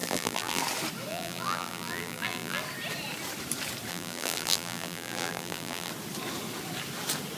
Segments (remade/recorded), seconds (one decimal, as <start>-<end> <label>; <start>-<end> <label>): 0.0-0.6 remade; 0.6-1.1 recorded; 1.1-2.6 remade; 2.6-3.9 recorded; 3.9-5.9 remade; 5.9-7.4 recorded